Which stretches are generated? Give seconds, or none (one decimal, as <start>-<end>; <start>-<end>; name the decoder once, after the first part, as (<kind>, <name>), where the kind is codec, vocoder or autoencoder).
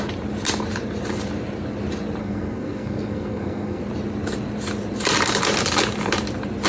2.2-3.8 (codec, SNAC)